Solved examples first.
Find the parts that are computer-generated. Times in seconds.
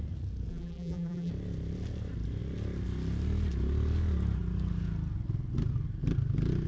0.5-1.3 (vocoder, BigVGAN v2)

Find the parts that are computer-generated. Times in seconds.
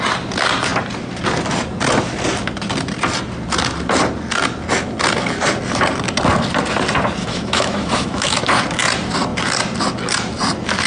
7.2-8.4 (autoencoder, DAC-VAE)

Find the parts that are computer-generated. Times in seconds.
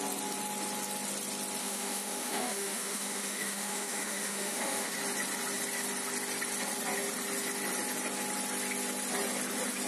1.6-4.9 (autoencoder, DAC-VAE)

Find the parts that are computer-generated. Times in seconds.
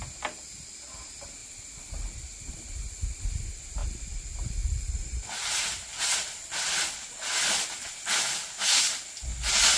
none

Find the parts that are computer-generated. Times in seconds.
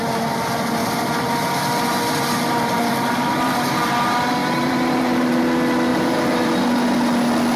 4.4-5.4 (vocoder, BigVGAN v2); 5.9-6.5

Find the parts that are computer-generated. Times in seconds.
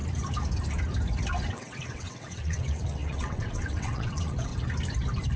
1.5-4.5 (vocoder, WaveNeXt)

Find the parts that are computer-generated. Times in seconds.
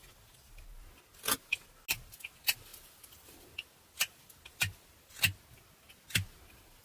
none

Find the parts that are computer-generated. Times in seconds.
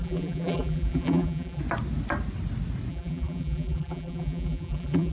0.0-1.6 (vocoder, BigVGAN v2); 2.9-5.1